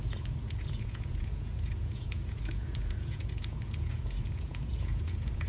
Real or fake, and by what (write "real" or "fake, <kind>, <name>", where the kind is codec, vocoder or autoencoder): fake, vocoder, Vocos